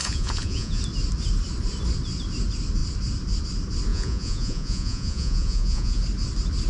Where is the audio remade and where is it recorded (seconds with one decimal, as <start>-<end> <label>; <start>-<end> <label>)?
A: 0.0-0.8 remade; 0.8-3.9 recorded; 3.9-6.0 remade; 6.0-6.7 recorded

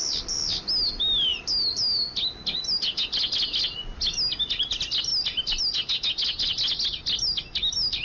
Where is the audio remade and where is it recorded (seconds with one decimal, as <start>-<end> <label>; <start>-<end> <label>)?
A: 0.0-8.0 recorded

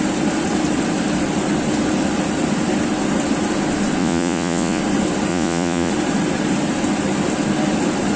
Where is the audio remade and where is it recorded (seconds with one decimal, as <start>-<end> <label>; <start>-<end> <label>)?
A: 0.0-4.0 recorded; 4.0-4.8 remade; 4.8-5.3 recorded; 5.3-5.9 remade; 5.9-8.2 recorded

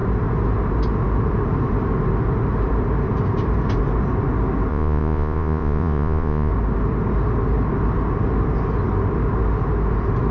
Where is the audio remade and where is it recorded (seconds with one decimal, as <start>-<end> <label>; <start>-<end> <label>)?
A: 0.0-4.7 recorded; 4.7-6.5 remade; 6.5-10.3 recorded

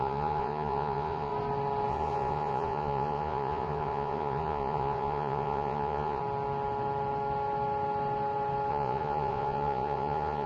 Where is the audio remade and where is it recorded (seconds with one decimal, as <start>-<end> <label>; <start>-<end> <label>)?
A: 0.0-1.3 remade; 1.3-1.9 recorded; 1.9-6.2 remade; 6.2-8.7 recorded; 8.7-10.5 remade